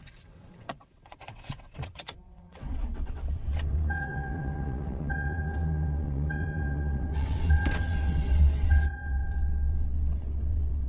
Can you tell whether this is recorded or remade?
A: remade